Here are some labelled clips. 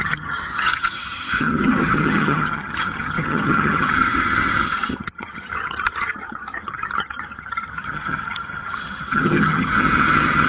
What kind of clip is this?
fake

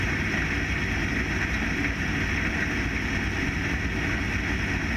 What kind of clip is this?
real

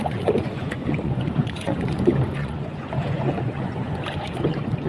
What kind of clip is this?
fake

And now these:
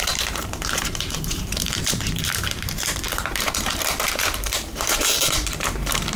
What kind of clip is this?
fake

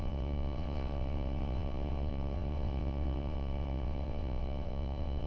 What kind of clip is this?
fake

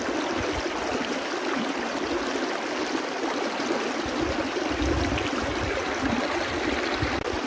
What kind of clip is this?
real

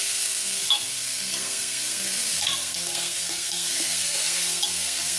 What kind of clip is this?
fake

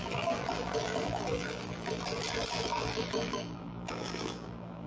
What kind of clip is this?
fake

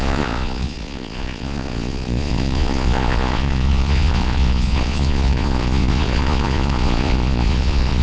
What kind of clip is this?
fake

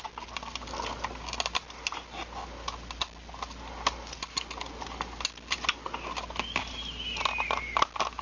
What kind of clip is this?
real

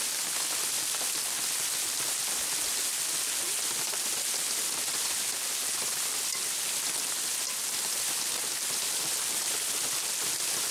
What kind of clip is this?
real